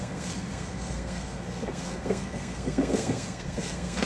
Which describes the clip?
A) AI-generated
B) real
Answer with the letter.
A